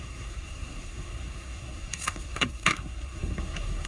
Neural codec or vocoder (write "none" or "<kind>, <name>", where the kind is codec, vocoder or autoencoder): codec, SNAC